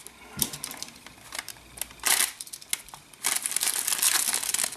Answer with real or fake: real